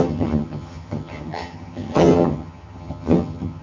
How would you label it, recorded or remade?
remade